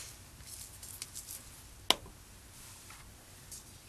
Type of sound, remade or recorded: recorded